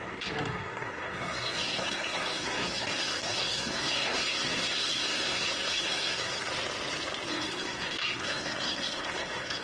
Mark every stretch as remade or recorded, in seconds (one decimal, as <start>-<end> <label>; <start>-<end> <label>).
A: 0.0-6.5 remade; 6.5-7.3 recorded; 7.3-9.6 remade